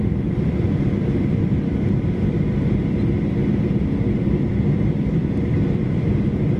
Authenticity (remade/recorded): remade